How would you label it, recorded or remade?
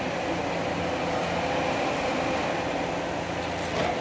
recorded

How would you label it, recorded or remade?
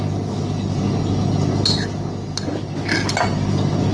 recorded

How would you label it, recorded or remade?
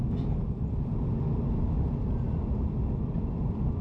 recorded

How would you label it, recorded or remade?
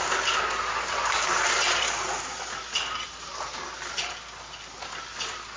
recorded